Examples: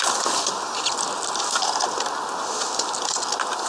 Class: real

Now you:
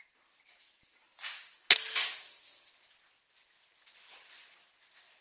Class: real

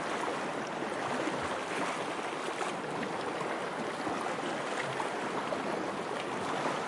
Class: real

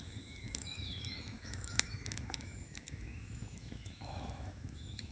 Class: fake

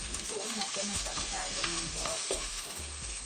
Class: fake